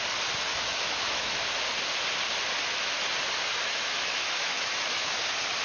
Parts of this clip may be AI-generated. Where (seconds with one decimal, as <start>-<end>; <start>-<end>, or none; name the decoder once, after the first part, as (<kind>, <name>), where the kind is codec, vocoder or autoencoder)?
0.5-1.3 (autoencoder, DAC-VAE); 3.5-5.1